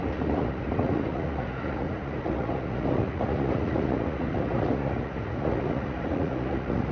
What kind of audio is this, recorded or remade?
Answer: remade